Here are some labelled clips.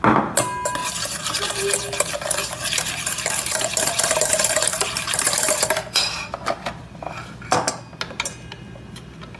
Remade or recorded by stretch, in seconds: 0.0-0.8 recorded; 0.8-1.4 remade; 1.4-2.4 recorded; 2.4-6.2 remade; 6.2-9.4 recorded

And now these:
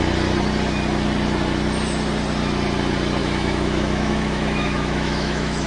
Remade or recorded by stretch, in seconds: 0.0-3.2 recorded; 3.2-5.7 remade

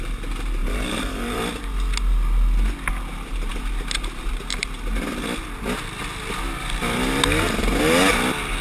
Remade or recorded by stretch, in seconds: 0.0-0.6 recorded; 0.6-1.4 remade; 1.4-8.6 recorded